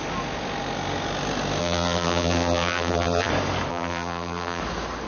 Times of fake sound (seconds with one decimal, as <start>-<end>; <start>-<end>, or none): 1.6-3.3; 3.7-4.6